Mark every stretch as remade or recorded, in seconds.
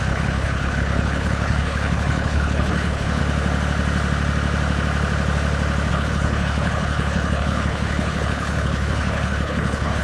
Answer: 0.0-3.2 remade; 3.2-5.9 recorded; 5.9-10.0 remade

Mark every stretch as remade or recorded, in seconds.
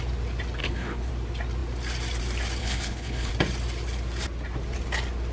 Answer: 0.0-0.6 recorded; 0.6-1.1 remade; 1.1-2.6 recorded; 2.6-3.3 remade; 3.3-5.3 recorded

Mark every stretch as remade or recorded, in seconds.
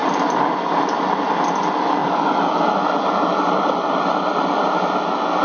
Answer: 0.0-5.4 recorded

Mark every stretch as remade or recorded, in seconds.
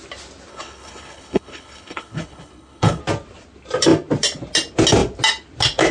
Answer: 0.0-0.5 recorded; 0.5-3.0 remade; 3.0-5.9 recorded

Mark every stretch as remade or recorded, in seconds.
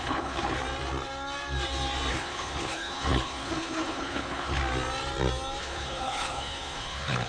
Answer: 0.0-0.6 remade; 0.6-2.1 recorded; 2.1-4.6 remade; 4.6-5.6 recorded; 5.6-7.3 remade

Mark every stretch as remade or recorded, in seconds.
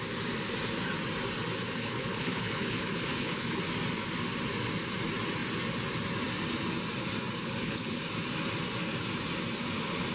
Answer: 0.0-1.8 recorded; 1.8-3.6 remade; 3.6-7.4 recorded; 7.4-8.0 remade; 8.0-10.1 recorded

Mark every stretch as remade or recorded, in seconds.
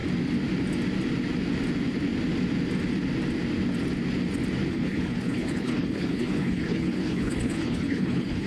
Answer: 0.0-4.7 recorded; 4.7-8.5 remade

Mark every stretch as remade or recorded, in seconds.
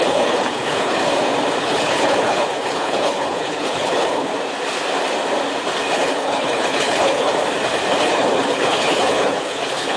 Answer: 0.0-1.0 remade; 1.0-1.6 recorded; 1.6-4.3 remade; 4.3-5.9 recorded; 5.9-7.3 remade; 7.3-8.0 recorded; 8.0-10.0 remade